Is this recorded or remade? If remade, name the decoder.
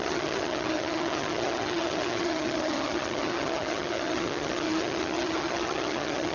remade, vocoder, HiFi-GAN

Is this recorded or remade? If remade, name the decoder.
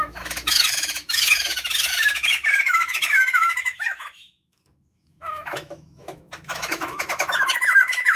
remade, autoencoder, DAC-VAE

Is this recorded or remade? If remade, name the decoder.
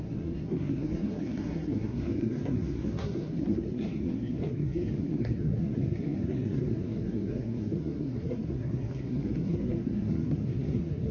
remade, codec, SNAC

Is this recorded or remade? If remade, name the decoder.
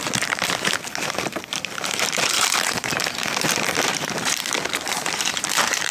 remade, vocoder, BigVGAN v2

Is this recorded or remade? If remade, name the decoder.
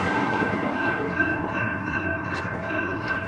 remade, codec, SNAC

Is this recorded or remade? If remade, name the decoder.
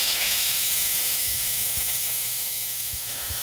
remade, autoencoder, DAC-VAE